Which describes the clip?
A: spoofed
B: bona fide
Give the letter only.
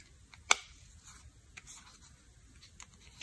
B